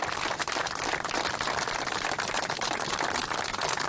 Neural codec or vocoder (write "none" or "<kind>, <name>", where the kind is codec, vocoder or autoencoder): none